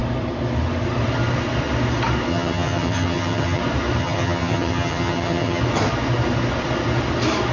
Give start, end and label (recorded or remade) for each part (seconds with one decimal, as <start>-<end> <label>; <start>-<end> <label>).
0.0-2.3 recorded; 2.3-3.6 remade; 3.6-4.0 recorded; 4.0-5.6 remade; 5.6-7.5 recorded